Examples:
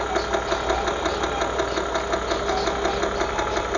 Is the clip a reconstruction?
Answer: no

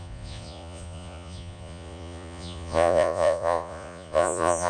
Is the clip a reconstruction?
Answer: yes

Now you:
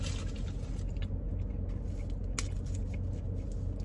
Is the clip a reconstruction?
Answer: no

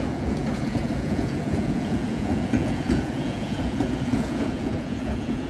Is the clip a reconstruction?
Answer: yes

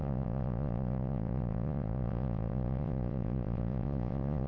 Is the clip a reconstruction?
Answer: yes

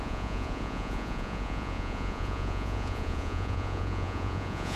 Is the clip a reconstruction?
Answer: yes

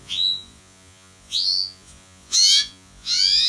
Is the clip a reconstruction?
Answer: yes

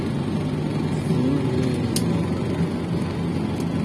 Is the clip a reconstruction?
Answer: no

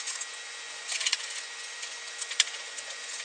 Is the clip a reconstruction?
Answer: yes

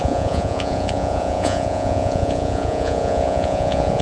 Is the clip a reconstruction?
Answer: yes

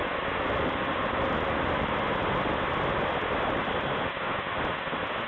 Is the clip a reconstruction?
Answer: no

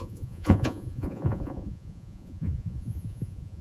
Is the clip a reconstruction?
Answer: yes